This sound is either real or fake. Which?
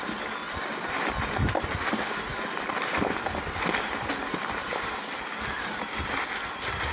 real